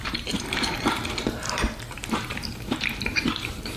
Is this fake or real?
fake